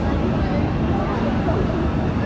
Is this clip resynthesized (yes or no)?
no